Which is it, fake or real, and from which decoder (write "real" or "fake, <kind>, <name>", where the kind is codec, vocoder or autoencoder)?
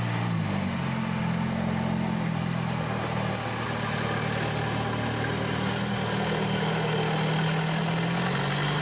real